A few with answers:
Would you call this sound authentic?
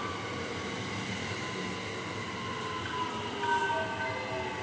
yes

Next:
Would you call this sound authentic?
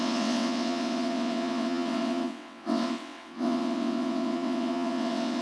no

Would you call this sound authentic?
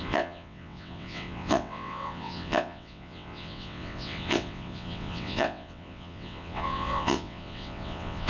no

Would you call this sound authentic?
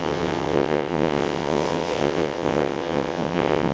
no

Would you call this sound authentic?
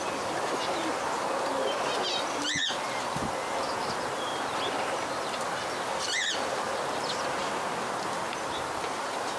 yes